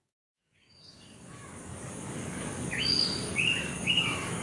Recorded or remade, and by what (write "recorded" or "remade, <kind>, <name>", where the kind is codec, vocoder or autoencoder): remade, codec, DAC